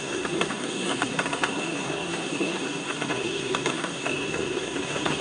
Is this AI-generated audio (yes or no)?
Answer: yes